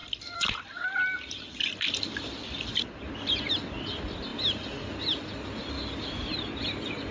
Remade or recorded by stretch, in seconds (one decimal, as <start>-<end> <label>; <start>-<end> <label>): 0.0-7.1 recorded